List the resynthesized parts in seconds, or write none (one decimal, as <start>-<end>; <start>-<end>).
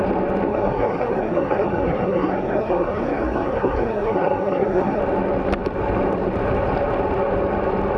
0.5-5.0